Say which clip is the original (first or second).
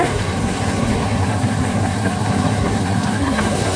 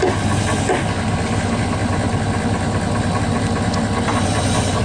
second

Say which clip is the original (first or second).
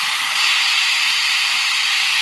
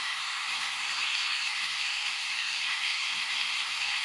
first